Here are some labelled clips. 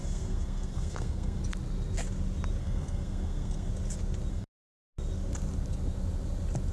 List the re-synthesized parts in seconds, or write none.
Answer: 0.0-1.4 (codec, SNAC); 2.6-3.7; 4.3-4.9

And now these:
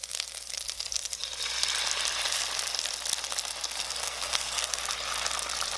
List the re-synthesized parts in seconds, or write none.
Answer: 4.0-4.8 (codec, SNAC)

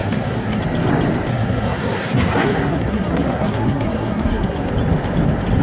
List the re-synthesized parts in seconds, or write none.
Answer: 0.0-0.6 (codec, SNAC); 1.3-4.7

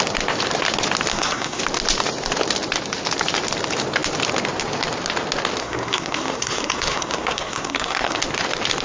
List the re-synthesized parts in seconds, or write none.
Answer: 1.1-1.6 (codec, SNAC); 5.6-8.2

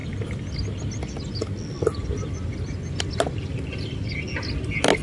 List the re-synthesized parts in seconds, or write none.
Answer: none

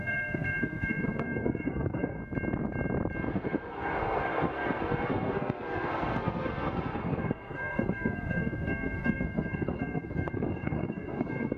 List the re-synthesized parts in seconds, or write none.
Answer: 0.0-2.2 (codec, SNAC); 3.3-11.6

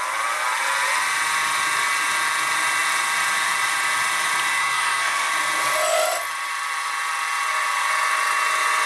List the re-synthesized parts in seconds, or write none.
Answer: 4.5-5.3 (codec, SNAC)